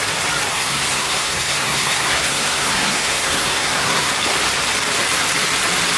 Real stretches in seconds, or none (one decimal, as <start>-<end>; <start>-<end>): 0.0-0.5; 4.1-6.0